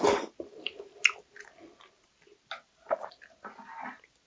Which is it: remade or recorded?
recorded